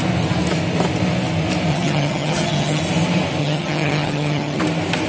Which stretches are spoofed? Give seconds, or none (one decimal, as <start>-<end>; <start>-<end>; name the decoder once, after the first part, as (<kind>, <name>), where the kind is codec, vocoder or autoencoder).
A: 1.7-2.8 (vocoder, HiFi-GAN); 3.4-4.6